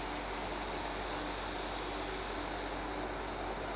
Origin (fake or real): real